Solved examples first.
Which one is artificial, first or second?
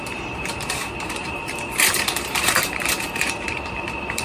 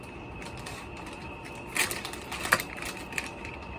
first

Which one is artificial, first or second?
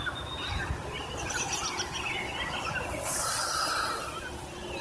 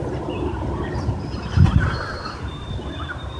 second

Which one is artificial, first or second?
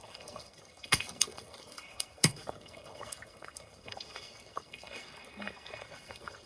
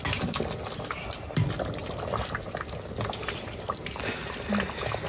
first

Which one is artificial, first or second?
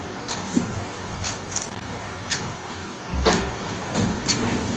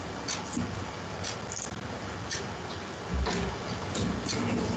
first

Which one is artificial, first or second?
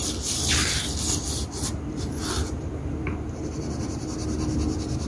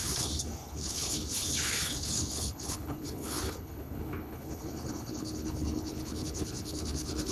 second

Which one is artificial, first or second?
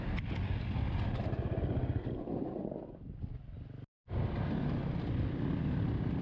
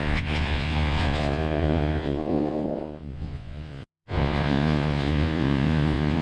second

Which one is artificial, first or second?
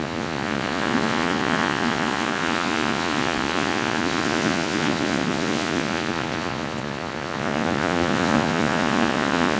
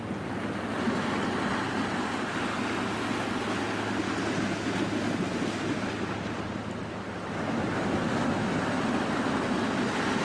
first